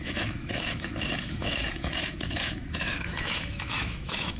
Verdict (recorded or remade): remade